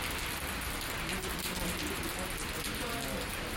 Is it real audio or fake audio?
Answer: real